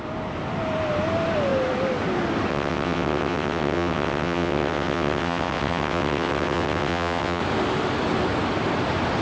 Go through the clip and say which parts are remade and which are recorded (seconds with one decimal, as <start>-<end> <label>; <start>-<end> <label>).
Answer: 0.0-2.5 recorded; 2.5-7.4 remade; 7.4-9.2 recorded